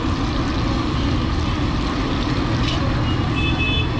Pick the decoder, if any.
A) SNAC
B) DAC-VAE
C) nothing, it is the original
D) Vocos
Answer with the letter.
C